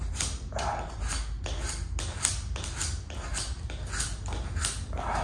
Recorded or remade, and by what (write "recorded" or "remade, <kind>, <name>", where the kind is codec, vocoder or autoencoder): recorded